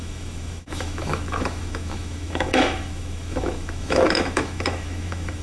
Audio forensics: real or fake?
fake